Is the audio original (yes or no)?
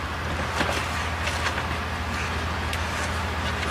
yes